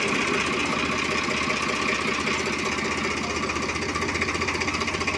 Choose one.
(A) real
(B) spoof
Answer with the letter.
A